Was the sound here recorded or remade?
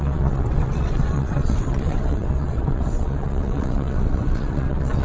remade